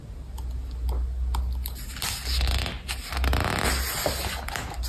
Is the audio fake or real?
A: real